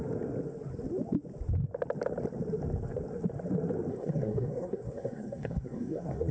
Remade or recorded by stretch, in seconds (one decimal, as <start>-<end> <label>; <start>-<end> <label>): 0.0-3.9 recorded; 3.9-6.3 remade